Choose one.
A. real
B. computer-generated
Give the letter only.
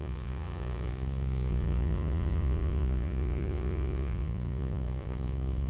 B